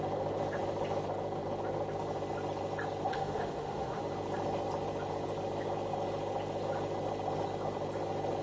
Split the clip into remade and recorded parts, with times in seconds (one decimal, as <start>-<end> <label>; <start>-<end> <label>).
0.0-3.1 recorded; 3.1-4.0 remade; 4.0-8.4 recorded

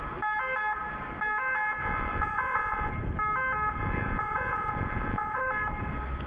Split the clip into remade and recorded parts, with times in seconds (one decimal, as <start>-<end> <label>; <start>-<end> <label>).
0.0-1.8 recorded; 1.8-2.9 remade; 2.9-3.8 recorded; 3.8-5.4 remade; 5.4-6.3 recorded

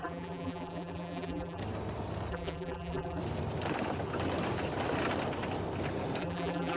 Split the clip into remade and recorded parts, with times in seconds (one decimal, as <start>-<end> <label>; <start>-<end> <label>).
0.0-1.6 remade; 1.6-2.3 recorded; 2.3-3.2 remade; 3.2-6.2 recorded; 6.2-6.8 remade

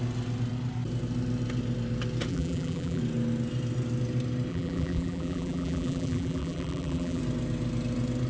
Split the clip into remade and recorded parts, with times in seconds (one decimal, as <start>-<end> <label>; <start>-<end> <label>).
0.0-2.3 recorded; 2.3-3.0 remade; 3.0-4.5 recorded; 4.5-7.2 remade; 7.2-8.3 recorded

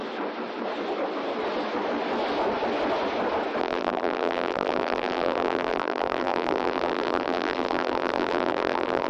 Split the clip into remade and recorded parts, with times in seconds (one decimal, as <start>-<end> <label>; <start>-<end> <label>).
0.0-3.6 recorded; 3.6-9.1 remade

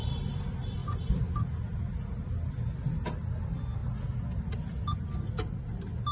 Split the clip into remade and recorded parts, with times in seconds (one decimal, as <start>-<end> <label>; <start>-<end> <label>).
0.0-6.1 recorded